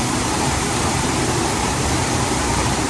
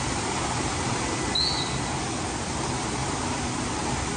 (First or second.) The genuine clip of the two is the second